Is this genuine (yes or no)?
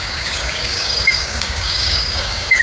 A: no